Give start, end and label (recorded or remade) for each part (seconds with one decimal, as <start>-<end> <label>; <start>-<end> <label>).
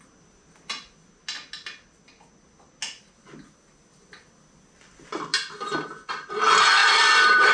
0.0-6.8 recorded; 6.8-7.5 remade